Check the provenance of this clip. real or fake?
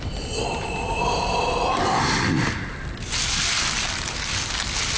real